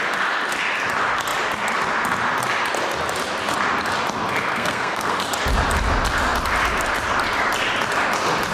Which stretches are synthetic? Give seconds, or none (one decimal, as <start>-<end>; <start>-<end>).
4.5-5.1